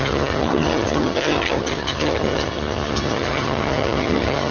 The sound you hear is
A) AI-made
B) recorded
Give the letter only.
A